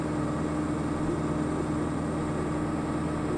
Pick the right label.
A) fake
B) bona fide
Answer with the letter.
B